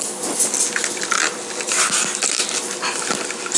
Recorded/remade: recorded